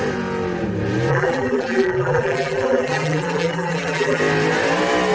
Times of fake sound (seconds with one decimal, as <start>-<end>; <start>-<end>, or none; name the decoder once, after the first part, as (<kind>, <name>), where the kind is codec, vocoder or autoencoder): 1.1-4.2 (vocoder, BigVGAN v2)